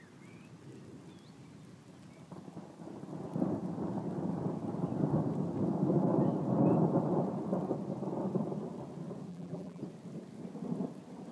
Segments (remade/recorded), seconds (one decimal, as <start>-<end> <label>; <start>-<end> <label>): 0.0-9.3 recorded; 9.3-9.8 remade; 9.8-11.3 recorded